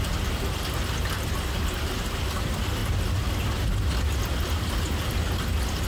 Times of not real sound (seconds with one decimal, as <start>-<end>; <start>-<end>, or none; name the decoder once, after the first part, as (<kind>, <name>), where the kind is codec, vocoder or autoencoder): none